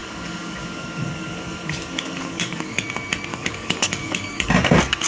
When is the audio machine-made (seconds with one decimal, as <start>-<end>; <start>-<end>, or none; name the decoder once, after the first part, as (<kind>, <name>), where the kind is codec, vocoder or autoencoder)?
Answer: 0.0-2.8 (codec, DAC); 3.3-4.5